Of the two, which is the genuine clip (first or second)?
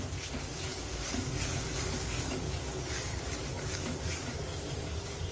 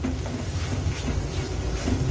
second